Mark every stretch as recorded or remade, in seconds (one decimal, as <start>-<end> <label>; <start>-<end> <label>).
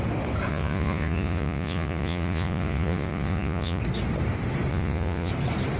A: 0.0-0.5 recorded; 0.5-3.8 remade; 3.8-4.7 recorded; 4.7-5.3 remade; 5.3-5.8 recorded